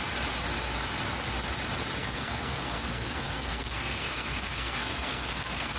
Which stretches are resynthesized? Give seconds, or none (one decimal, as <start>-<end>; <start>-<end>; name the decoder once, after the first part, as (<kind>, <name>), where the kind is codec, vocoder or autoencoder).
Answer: 2.0-5.8 (codec, SNAC)